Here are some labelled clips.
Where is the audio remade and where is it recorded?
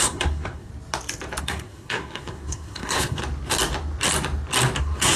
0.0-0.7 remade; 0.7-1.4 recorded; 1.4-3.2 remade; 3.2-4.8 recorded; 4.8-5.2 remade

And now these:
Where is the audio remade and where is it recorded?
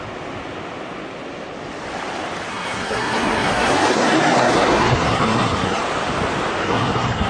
0.0-2.5 recorded; 2.5-5.8 remade; 5.8-6.6 recorded; 6.6-7.3 remade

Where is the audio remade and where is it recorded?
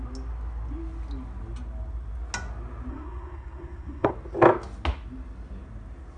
0.0-2.9 recorded; 2.9-4.1 remade; 4.1-6.2 recorded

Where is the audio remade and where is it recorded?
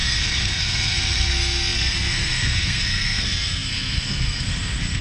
0.0-5.0 remade